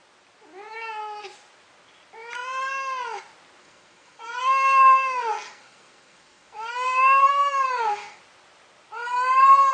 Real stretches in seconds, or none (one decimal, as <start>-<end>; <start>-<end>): 0.0-3.6; 8.2-9.7